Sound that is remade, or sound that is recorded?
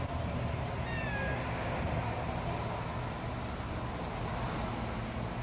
recorded